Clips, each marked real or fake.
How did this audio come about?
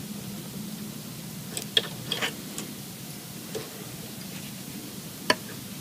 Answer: real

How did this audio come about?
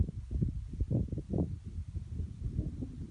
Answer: real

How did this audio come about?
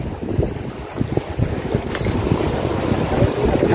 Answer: fake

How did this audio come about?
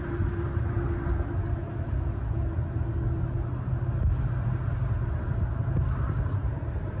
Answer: real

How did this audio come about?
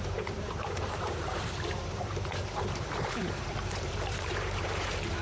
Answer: fake